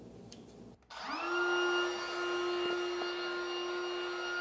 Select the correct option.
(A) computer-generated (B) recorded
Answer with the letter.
B